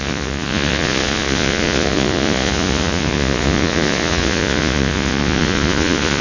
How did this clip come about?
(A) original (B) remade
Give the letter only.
B